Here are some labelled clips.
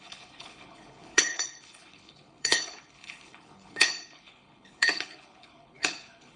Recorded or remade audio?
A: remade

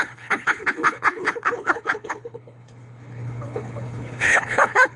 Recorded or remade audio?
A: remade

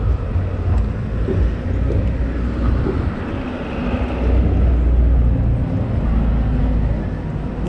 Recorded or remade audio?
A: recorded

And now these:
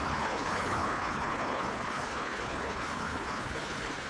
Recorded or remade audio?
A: remade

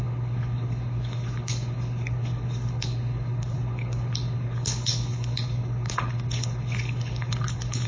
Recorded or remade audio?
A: remade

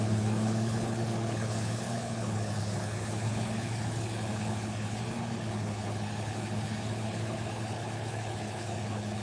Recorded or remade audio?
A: remade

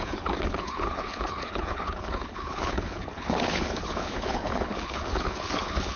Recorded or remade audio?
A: remade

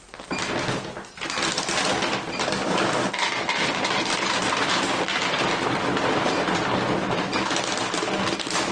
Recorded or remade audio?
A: recorded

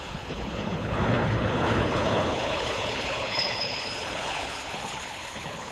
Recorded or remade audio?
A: remade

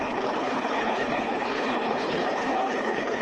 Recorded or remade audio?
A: remade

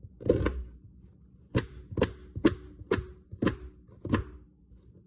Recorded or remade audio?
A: recorded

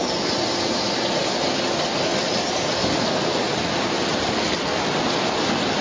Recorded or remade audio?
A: recorded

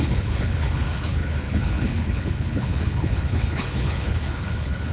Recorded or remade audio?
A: remade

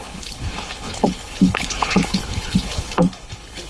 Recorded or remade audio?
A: remade